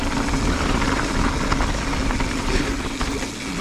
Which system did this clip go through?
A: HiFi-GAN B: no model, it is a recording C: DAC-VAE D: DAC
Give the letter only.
B